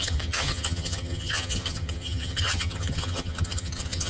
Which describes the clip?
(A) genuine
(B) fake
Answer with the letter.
B